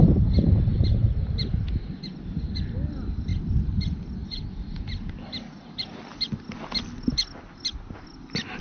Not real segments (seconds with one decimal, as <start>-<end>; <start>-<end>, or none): none